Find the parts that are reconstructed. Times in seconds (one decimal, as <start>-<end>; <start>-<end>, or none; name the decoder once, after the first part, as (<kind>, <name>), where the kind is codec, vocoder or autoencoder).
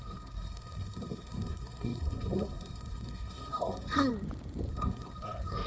0.0-4.1 (codec, SNAC); 4.7-5.7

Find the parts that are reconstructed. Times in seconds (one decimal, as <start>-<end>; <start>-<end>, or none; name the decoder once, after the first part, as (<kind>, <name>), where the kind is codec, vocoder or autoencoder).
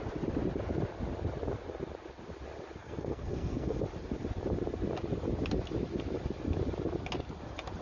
2.8-3.8 (codec, SNAC)